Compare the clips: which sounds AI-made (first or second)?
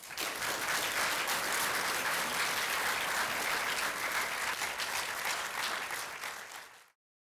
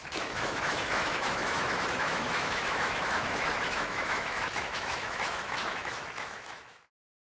second